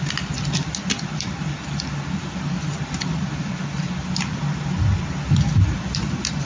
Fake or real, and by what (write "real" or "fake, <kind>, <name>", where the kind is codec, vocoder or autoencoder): real